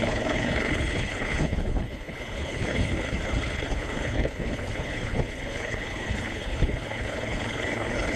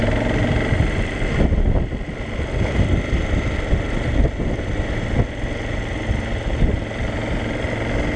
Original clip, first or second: second